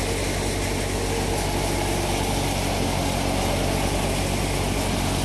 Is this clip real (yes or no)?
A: yes